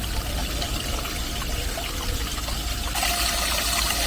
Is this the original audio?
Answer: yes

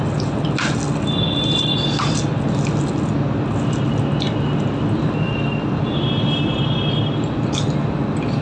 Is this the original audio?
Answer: yes